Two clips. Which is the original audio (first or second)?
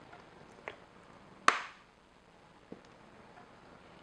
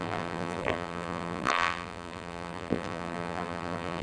first